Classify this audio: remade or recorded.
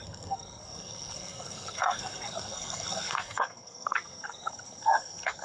remade